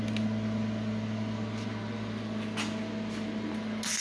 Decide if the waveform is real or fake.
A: real